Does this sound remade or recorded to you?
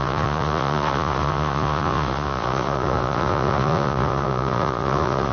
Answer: remade